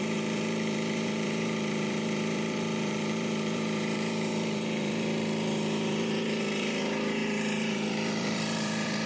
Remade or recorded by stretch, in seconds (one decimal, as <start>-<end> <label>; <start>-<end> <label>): 0.0-9.1 remade